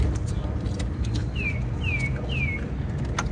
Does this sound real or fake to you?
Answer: real